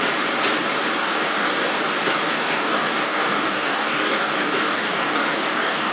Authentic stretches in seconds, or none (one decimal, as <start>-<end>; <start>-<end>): 0.0-1.0; 1.8-2.3